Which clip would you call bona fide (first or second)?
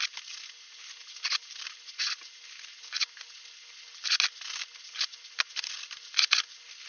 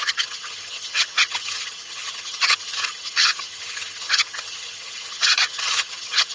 first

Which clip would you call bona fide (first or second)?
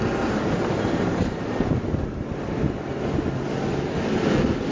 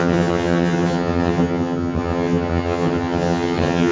first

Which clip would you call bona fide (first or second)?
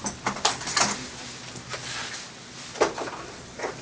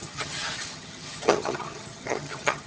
first